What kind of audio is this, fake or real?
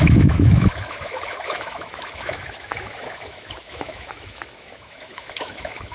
fake